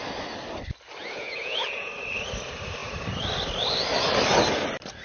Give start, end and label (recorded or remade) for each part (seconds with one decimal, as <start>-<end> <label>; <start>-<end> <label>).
0.0-1.0 recorded; 1.0-1.9 remade; 1.9-5.0 recorded